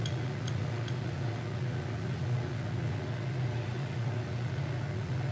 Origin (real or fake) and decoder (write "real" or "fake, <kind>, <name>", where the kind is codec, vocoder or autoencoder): fake, vocoder, Vocos